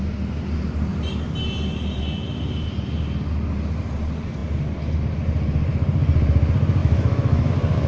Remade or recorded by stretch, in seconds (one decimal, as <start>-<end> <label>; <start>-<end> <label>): 0.0-6.8 recorded; 6.8-7.5 remade; 7.5-7.9 recorded

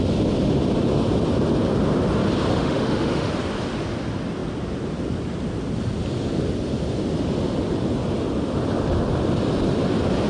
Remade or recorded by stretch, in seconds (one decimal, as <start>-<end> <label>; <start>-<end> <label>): 0.0-2.5 recorded; 2.5-3.3 remade; 3.3-10.3 recorded

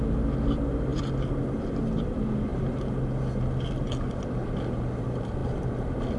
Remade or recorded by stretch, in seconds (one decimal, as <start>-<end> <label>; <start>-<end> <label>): 0.0-6.2 recorded